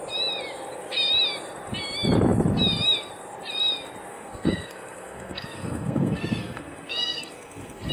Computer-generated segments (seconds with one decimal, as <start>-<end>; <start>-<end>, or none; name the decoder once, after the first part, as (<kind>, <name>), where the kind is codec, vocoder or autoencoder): 4.1-7.9 (codec, SNAC)